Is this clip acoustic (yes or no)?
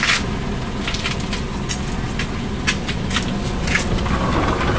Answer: yes